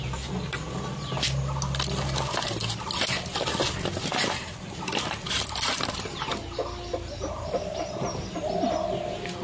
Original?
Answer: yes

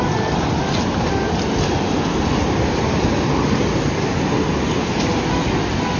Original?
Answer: yes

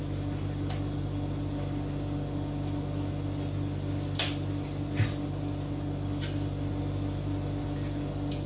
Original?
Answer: yes